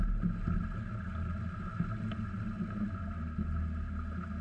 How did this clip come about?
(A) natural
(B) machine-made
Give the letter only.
A